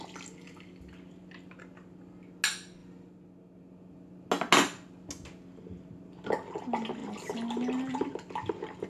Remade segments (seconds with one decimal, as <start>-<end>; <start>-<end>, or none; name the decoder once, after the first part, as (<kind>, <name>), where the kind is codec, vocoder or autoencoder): none